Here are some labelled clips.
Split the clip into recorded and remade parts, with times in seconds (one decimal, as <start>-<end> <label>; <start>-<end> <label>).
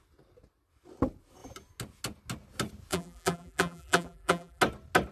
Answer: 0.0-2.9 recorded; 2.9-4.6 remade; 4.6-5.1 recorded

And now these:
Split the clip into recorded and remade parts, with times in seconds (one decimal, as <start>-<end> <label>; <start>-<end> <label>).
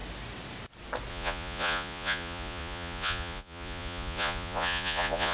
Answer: 0.0-1.1 recorded; 1.1-5.3 remade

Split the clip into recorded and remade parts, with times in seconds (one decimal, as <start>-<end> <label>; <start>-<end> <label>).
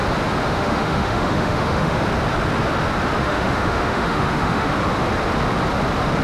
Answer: 0.0-0.4 recorded; 0.4-2.0 remade; 2.0-3.2 recorded; 3.2-4.7 remade; 4.7-6.2 recorded